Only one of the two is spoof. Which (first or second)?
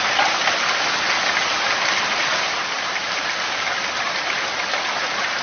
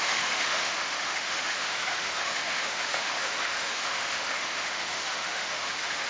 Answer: second